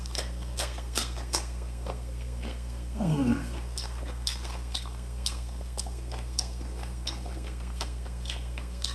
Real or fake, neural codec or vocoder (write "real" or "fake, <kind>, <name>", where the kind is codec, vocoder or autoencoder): fake, codec, SNAC